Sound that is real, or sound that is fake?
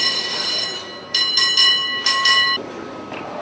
fake